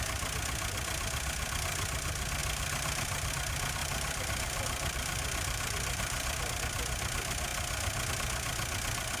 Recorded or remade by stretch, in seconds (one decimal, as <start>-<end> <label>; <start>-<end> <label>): 0.0-2.4 recorded; 2.4-3.3 remade; 3.3-3.8 recorded; 3.8-6.5 remade; 6.5-9.2 recorded